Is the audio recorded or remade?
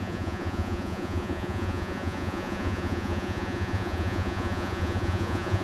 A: remade